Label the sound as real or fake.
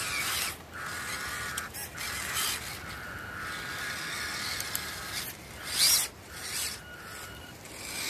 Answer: real